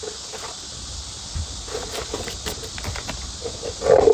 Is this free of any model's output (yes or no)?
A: yes